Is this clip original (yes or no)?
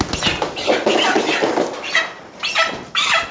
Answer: yes